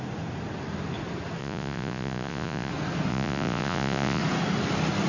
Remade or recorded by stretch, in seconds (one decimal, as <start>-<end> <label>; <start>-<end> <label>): 0.0-1.4 recorded; 1.4-2.7 remade; 2.7-3.1 recorded; 3.1-4.2 remade; 4.2-5.1 recorded